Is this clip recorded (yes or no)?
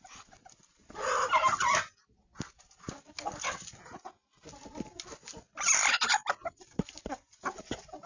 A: yes